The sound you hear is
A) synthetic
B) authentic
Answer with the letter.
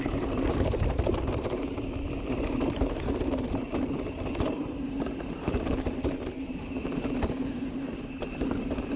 A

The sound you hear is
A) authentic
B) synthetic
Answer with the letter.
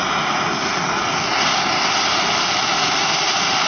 A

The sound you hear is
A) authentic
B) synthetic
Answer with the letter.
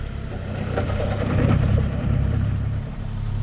B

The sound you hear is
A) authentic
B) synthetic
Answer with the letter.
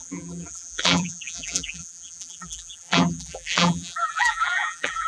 B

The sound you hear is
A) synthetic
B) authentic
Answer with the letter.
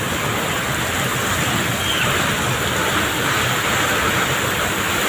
A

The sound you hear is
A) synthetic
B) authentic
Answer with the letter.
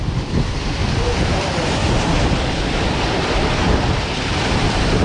A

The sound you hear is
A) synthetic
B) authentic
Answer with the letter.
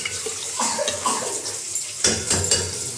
B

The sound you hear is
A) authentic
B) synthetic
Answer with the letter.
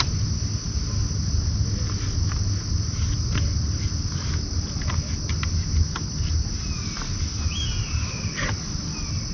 A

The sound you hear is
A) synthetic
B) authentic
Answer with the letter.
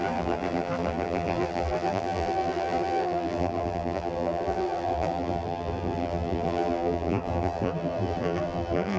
A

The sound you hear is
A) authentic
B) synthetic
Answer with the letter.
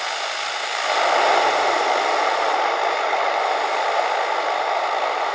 A